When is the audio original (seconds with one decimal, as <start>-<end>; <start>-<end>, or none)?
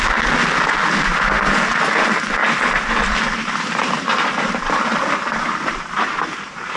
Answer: 0.0-2.4; 2.9-3.4